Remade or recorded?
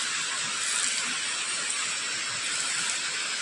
recorded